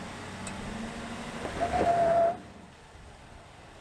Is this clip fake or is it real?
real